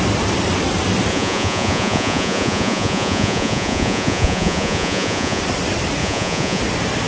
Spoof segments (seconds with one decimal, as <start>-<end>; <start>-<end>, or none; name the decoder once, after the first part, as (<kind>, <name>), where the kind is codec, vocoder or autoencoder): 1.1-5.4 (vocoder, Vocos); 6.0-6.6